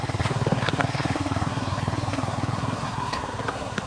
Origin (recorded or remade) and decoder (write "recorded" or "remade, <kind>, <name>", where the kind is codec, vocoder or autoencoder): remade, codec, SNAC